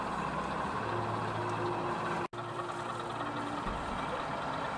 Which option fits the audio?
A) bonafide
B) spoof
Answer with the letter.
A